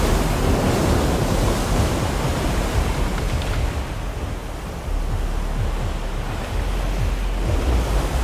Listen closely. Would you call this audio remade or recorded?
recorded